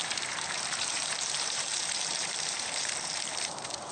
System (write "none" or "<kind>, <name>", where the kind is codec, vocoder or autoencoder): vocoder, BigVGAN v2